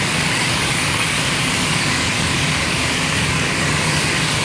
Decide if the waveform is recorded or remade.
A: remade